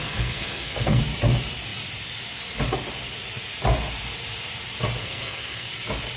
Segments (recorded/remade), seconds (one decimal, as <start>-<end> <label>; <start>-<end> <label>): 0.0-1.0 remade; 1.0-5.0 recorded; 5.0-5.7 remade; 5.7-6.2 recorded